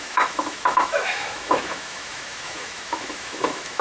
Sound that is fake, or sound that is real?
fake